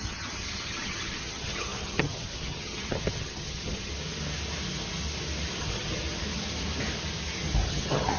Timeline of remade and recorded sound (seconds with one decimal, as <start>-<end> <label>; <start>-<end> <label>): 0.0-3.9 remade; 3.9-5.6 recorded; 5.6-6.0 remade; 6.0-7.7 recorded; 7.7-8.2 remade